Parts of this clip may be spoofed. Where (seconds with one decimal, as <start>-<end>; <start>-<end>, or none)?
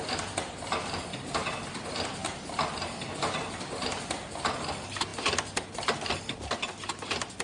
none